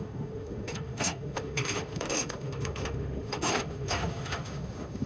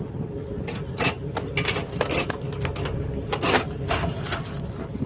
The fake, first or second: first